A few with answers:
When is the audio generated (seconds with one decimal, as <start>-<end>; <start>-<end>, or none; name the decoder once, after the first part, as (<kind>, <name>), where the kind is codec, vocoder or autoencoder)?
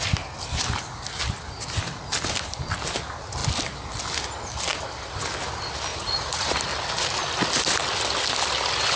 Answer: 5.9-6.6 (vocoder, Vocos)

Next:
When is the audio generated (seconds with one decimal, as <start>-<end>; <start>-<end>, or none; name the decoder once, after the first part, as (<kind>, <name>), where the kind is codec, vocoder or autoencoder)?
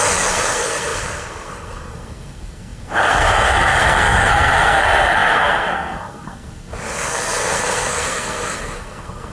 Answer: 0.0-9.3 (codec, SNAC)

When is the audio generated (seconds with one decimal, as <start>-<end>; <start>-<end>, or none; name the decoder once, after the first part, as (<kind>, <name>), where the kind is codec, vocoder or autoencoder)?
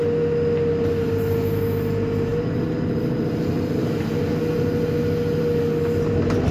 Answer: none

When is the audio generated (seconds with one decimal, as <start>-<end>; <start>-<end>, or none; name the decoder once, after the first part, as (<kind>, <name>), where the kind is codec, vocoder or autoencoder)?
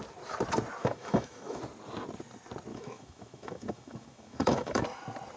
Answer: 0.8-1.6 (autoencoder, DAC-VAE); 2.7-4.8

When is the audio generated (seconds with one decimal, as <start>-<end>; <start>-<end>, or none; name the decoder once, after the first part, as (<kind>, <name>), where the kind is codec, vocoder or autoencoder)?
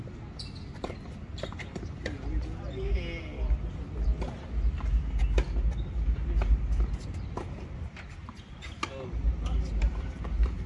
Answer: none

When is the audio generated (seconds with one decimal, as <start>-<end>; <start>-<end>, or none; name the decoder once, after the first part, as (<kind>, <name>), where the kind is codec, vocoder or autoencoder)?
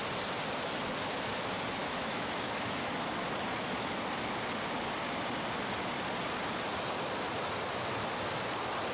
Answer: 1.8-2.9 (autoencoder, DAC-VAE)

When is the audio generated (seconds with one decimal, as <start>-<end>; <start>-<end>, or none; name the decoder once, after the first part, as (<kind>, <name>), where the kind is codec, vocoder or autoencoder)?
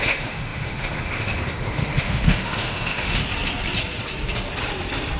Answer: 0.0-3.2 (autoencoder, DAC-VAE)